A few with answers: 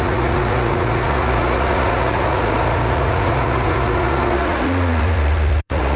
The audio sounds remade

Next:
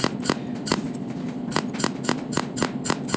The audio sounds recorded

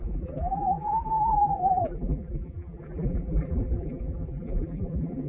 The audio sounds remade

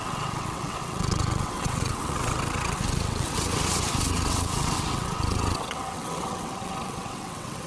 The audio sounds remade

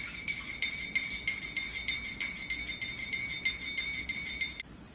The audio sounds recorded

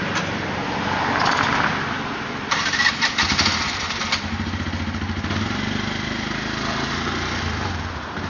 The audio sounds recorded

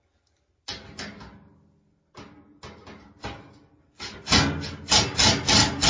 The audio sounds recorded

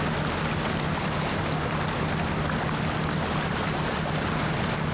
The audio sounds recorded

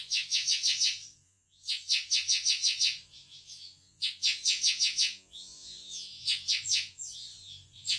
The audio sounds remade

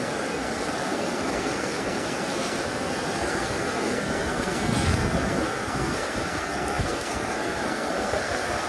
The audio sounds remade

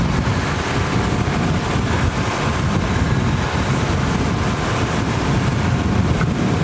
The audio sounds recorded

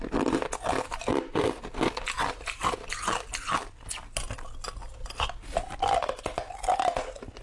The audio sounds recorded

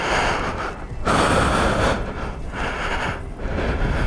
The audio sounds recorded